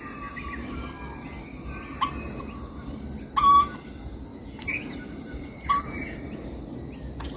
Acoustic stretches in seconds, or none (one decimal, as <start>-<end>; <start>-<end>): 0.0-4.3; 5.7-7.4